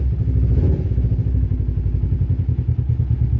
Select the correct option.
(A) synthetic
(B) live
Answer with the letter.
B